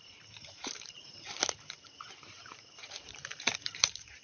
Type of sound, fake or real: fake